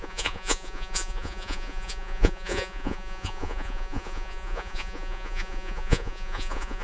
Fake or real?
fake